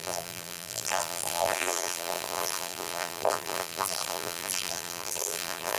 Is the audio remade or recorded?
remade